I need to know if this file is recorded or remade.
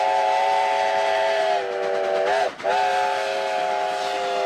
recorded